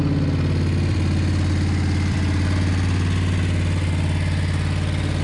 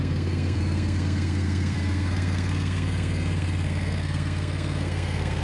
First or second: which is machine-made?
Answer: second